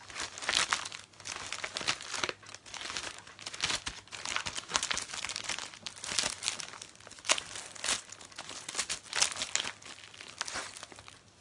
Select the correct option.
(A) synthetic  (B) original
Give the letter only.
B